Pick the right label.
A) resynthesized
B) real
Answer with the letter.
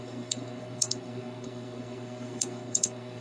A